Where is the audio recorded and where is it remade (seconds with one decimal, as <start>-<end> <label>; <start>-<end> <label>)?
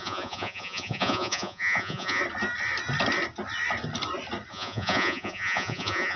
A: 0.0-2.2 remade; 2.2-4.5 recorded; 4.5-6.2 remade